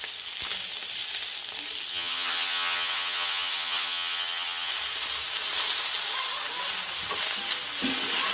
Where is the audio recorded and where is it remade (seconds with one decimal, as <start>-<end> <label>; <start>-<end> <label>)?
0.0-1.9 recorded; 1.9-4.7 remade; 4.7-8.3 recorded